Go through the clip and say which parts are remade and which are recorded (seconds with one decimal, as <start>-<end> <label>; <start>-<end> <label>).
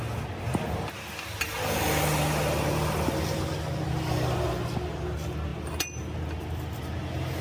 0.0-7.4 recorded